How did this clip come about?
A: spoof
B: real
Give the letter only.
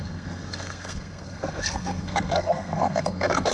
A